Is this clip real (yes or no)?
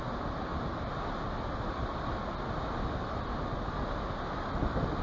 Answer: yes